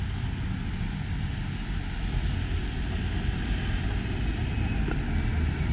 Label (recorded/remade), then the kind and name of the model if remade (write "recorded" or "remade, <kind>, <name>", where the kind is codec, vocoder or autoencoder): recorded